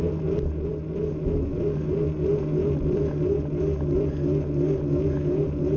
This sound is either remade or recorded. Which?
recorded